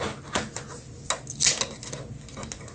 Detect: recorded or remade recorded